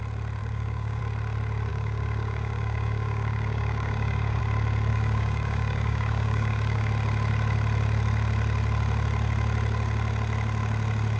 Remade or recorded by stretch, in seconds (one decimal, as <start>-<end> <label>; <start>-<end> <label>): 0.0-0.4 recorded; 0.4-1.0 remade; 1.0-1.7 recorded; 1.7-4.4 remade; 4.4-4.9 recorded; 4.9-6.9 remade; 6.9-11.2 recorded